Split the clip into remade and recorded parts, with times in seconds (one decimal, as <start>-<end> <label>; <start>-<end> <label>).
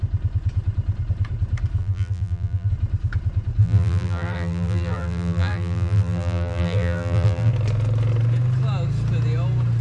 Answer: 0.0-1.8 recorded; 1.8-2.7 remade; 2.7-3.6 recorded; 3.6-7.5 remade; 7.5-9.8 recorded